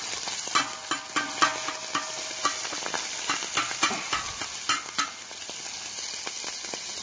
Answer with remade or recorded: recorded